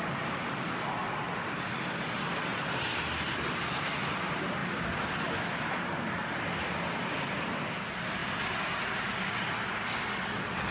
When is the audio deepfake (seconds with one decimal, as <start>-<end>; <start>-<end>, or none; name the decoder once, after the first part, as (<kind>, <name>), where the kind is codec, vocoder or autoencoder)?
none

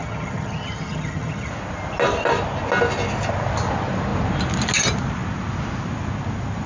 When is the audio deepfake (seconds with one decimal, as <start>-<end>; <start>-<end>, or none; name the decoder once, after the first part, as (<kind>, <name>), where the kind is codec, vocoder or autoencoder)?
0.0-1.5 (vocoder, HiFi-GAN)

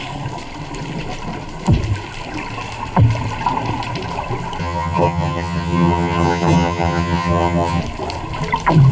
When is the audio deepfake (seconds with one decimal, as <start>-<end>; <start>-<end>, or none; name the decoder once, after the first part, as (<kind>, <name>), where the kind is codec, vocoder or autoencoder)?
4.6-7.8 (vocoder, HiFi-GAN)

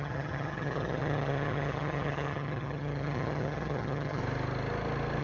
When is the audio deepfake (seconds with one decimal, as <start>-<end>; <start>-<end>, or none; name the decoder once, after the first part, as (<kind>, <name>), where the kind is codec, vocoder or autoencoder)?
0.0-4.2 (vocoder, HiFi-GAN)

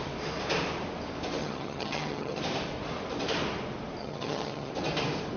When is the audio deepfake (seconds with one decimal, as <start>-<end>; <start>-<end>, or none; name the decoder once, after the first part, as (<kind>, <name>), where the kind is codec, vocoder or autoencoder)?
1.4-2.4 (vocoder, HiFi-GAN); 4.0-4.7